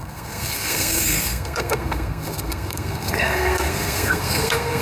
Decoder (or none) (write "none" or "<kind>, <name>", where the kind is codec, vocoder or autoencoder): codec, SNAC